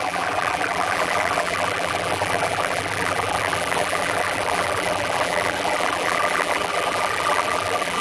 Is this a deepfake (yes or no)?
yes